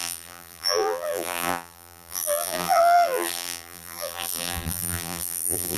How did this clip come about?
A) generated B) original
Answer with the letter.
A